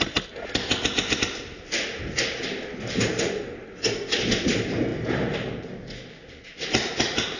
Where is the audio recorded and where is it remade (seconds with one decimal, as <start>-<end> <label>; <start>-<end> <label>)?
0.0-7.4 recorded